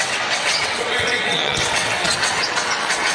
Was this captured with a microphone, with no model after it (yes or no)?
no